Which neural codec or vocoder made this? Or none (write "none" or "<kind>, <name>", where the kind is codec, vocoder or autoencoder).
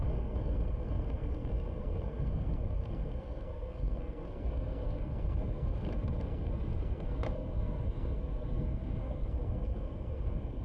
codec, SNAC